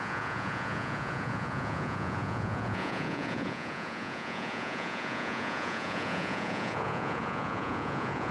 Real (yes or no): no